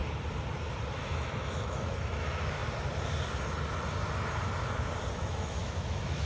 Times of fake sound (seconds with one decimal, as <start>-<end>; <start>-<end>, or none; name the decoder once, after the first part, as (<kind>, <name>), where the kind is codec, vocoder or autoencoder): 0.9-2.6 (autoencoder, DAC-VAE); 5.1-6.3